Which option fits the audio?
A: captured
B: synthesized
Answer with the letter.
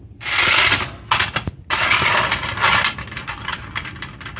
A